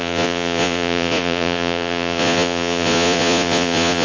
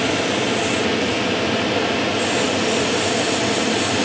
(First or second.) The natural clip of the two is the second